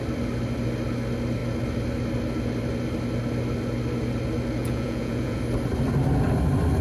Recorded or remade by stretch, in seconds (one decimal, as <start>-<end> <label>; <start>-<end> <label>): 0.0-4.6 recorded; 4.6-5.4 remade; 5.4-6.8 recorded